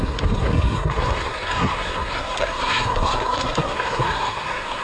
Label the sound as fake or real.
fake